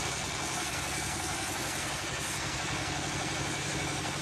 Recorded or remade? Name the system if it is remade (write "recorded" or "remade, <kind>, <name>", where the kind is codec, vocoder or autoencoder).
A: remade, codec, SNAC